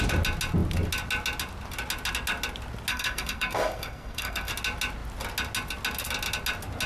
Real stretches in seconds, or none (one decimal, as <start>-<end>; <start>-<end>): 0.0-2.9; 4.5-6.9